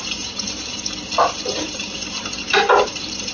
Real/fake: fake